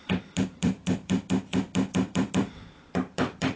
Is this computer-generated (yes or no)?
yes